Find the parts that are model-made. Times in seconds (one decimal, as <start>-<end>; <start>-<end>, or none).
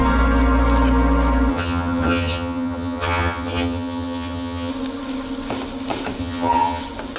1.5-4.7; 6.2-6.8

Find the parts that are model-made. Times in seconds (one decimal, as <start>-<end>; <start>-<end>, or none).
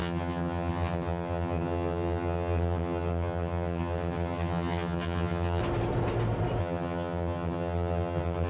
0.0-5.6; 6.6-8.5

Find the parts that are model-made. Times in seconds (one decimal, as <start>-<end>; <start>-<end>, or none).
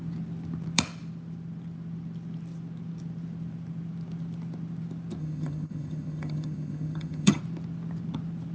5.2-7.4